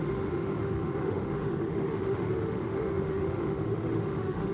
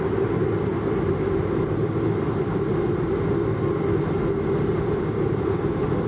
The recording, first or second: second